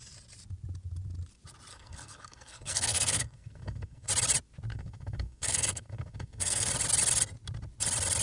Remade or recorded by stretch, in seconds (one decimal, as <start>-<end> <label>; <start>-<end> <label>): 0.0-1.7 recorded; 1.7-4.1 remade; 4.1-4.7 recorded; 4.7-6.7 remade; 6.7-8.2 recorded